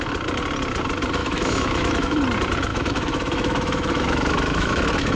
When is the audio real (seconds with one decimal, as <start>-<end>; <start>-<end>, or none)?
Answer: 0.0-1.2; 2.2-2.7